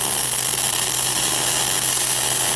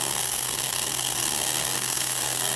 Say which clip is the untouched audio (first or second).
first